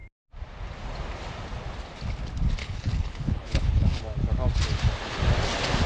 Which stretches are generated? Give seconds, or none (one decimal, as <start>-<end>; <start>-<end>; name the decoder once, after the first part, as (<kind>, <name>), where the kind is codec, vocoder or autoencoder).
2.6-4.0 (codec, HILCodec)